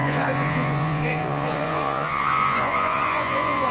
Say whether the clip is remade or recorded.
remade